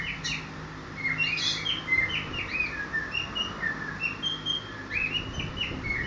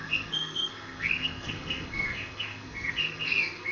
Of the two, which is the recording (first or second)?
first